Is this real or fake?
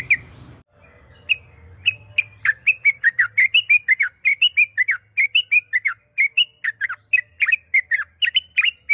real